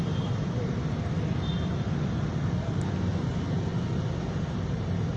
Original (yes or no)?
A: yes